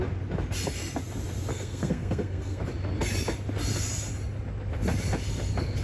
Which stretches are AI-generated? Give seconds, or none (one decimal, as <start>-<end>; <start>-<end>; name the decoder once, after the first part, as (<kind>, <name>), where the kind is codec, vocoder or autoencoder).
1.5-2.6 (codec, SNAC)